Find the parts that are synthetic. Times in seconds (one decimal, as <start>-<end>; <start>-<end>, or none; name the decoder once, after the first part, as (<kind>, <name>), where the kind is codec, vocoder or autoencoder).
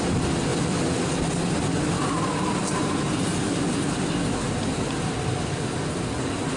0.5-2.8 (vocoder, BigVGAN v2); 3.3-4.1